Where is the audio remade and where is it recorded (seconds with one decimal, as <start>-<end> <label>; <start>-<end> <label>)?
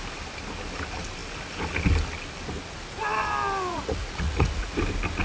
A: 0.0-3.7 recorded; 3.7-4.8 remade; 4.8-5.2 recorded